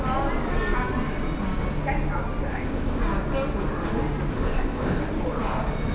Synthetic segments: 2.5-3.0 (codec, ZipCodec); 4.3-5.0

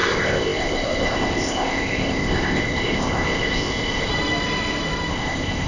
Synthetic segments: 0.0-4.1 (codec, ZipCodec); 5.1-5.7

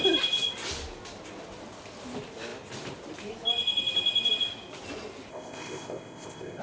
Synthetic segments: 5.3-6.6 (codec, ZipCodec)

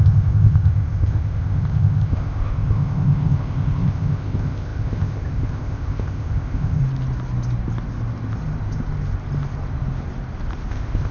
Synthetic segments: 0.0-6.8 (codec, ZipCodec); 10.7-11.1

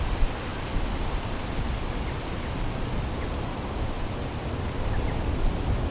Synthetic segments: none

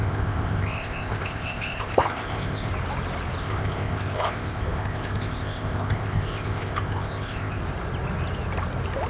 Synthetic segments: 0.0-2.7 (codec, ZipCodec); 3.4-7.6